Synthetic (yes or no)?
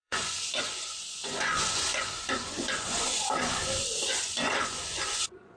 yes